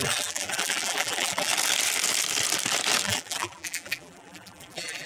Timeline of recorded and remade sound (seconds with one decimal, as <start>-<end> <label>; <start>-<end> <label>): 0.0-1.5 remade; 1.5-3.0 recorded; 3.0-5.1 remade